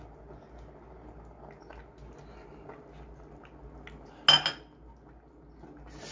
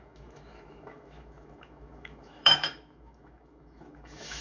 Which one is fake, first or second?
second